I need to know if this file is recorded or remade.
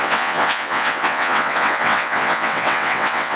remade